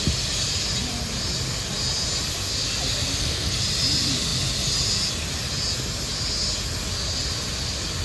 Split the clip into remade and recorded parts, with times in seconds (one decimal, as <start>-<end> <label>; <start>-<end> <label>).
0.0-3.1 recorded; 3.1-3.6 remade; 3.6-8.0 recorded